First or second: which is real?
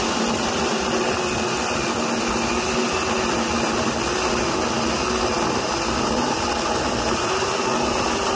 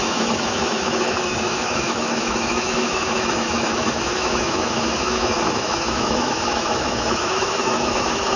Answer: first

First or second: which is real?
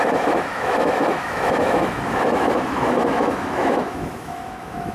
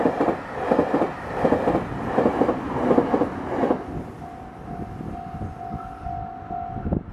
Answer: second